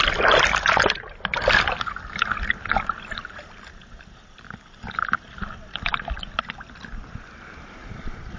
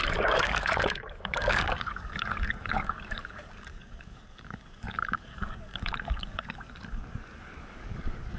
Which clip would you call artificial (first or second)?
second